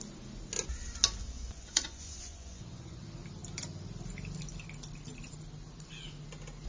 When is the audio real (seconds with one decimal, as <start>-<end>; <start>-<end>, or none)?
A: 0.0-1.2; 3.0-6.7